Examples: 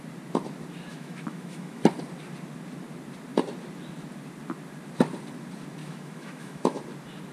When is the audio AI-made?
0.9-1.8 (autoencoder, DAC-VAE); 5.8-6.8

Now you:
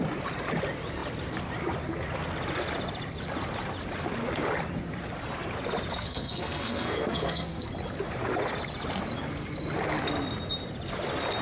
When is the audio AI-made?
5.9-7.7 (codec, SNAC)

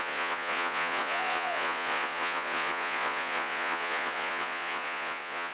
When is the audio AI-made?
0.0-5.5 (vocoder, Vocos)

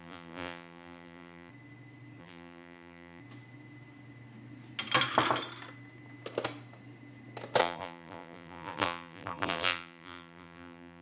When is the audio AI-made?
0.0-1.5 (vocoder, BigVGAN v2); 2.2-3.2; 7.6-11.0

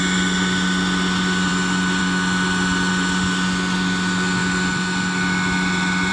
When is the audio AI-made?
none

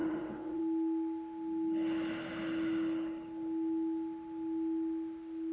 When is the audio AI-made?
0.0-0.6 (vocoder, WaveNeXt)

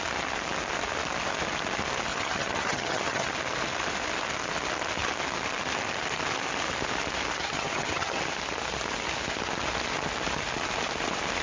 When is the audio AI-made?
2.1-3.3 (vocoder, HiFi-GAN); 7.4-8.2